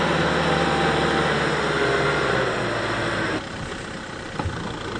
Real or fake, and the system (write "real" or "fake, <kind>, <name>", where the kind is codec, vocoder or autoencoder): real